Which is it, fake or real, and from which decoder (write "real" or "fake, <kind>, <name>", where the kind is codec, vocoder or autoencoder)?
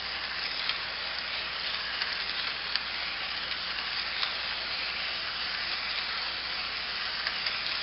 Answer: real